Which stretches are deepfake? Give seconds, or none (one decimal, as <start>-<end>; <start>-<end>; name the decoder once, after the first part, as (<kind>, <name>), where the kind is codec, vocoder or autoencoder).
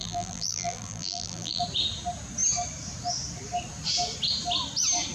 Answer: 0.0-1.6 (vocoder, BigVGAN v2)